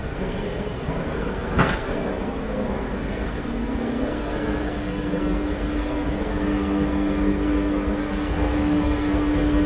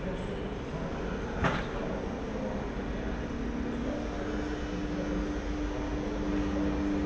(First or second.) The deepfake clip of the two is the first